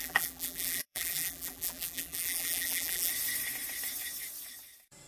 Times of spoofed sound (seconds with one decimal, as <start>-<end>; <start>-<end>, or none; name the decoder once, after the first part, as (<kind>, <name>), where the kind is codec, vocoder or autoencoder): 0.0-3.1 (vocoder, BigVGAN v2)